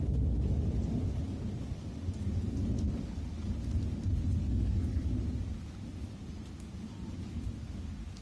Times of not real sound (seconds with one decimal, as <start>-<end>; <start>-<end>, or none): 4.4-5.1